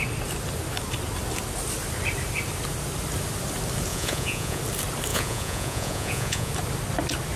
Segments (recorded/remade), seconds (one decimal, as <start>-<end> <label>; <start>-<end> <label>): 0.0-3.9 recorded; 3.9-4.6 remade; 4.6-5.1 recorded; 5.1-6.5 remade; 6.5-7.4 recorded